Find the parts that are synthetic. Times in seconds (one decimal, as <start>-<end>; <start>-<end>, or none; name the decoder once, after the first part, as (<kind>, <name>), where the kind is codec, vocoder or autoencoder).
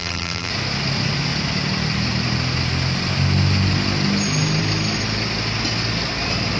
0.0-0.5 (vocoder, BigVGAN v2)